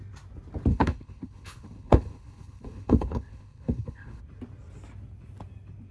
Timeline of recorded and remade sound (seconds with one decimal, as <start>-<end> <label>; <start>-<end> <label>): 0.0-0.7 recorded; 0.7-4.2 remade; 4.2-5.9 recorded